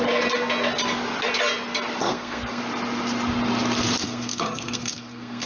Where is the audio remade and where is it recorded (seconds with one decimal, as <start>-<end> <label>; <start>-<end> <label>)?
0.0-2.0 recorded; 2.0-2.6 remade; 2.6-4.0 recorded; 4.0-5.5 remade